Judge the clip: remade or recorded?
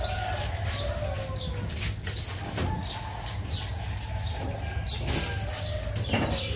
recorded